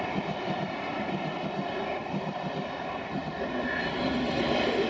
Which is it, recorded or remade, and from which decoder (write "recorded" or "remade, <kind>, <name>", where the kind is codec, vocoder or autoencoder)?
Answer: recorded